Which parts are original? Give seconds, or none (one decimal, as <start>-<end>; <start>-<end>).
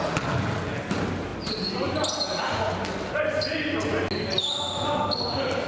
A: 0.0-5.7